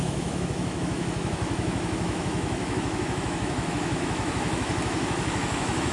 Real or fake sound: fake